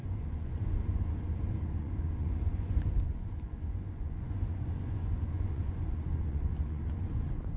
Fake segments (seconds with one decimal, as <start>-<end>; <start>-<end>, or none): 0.0-7.6